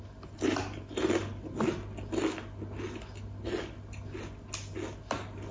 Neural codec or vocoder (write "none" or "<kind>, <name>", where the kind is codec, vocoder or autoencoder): none